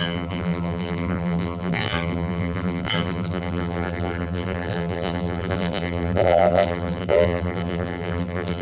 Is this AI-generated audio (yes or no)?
yes